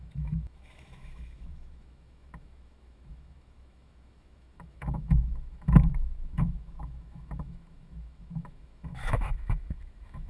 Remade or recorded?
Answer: remade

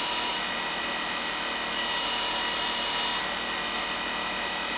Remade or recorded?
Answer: recorded